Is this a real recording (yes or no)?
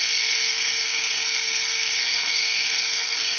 no